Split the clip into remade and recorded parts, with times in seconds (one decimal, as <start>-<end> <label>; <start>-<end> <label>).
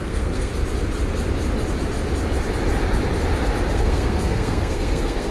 0.0-0.5 remade; 0.5-3.7 recorded; 3.7-5.3 remade